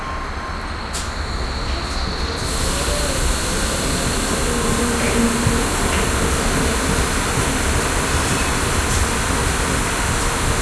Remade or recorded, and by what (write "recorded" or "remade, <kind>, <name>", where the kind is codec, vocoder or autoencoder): recorded